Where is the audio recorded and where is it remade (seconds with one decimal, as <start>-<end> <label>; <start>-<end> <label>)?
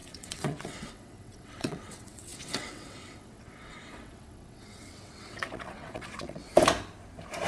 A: 0.0-6.5 remade; 6.5-7.5 recorded